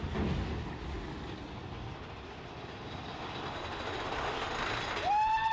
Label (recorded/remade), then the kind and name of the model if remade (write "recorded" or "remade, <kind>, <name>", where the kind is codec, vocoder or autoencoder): recorded